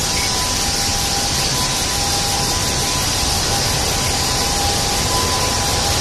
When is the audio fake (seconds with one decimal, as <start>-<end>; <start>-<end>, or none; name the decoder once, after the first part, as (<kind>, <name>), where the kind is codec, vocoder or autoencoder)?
none